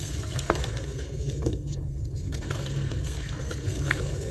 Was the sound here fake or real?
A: fake